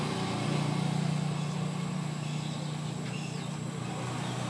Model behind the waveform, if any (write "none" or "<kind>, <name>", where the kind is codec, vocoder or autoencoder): none